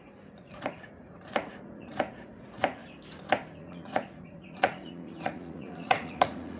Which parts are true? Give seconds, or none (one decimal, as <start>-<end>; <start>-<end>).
2.8-3.6

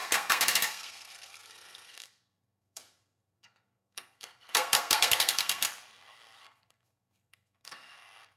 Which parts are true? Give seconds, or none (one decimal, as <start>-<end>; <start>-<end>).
none

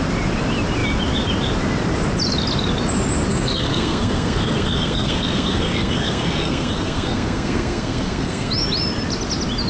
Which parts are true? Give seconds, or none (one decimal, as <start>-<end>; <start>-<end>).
0.0-3.3; 8.5-9.7

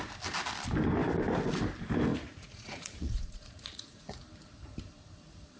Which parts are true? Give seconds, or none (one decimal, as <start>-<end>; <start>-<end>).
0.0-2.1; 4.2-5.6

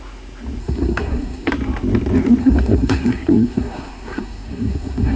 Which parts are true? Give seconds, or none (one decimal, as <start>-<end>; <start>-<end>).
0.0-0.6; 1.5-2.4